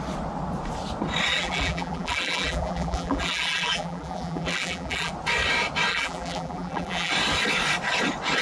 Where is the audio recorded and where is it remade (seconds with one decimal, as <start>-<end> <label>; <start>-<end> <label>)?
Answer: 0.0-1.3 recorded; 1.3-5.1 remade; 5.1-5.9 recorded; 5.9-7.1 remade; 7.1-8.4 recorded